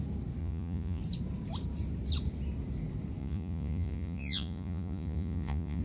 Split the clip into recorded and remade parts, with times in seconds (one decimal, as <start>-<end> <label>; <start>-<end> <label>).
0.0-0.4 recorded; 0.4-1.0 remade; 1.0-3.2 recorded; 3.2-5.8 remade